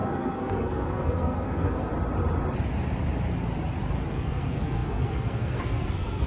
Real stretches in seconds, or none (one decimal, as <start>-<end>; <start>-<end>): 1.9-4.1